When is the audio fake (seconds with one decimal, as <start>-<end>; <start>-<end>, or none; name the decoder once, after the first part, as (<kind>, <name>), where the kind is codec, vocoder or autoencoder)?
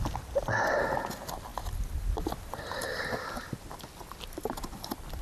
none